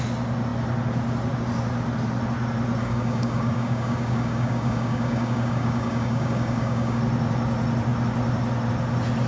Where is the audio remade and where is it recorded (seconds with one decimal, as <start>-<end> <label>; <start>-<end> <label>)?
0.0-2.8 recorded; 2.8-7.0 remade; 7.0-9.3 recorded